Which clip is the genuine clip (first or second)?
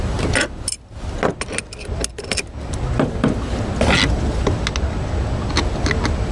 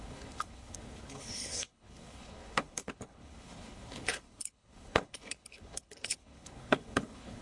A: first